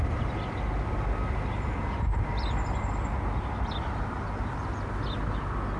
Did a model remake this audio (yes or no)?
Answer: no